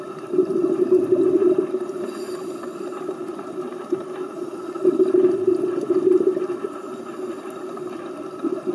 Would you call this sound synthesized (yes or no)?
yes